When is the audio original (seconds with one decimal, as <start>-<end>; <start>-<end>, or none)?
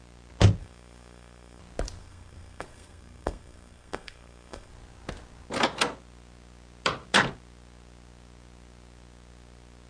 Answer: 0.0-0.6; 1.6-2.0; 4.7-9.9